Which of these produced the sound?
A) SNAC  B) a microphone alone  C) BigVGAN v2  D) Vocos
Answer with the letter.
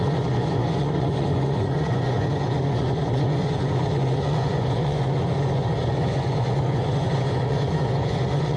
D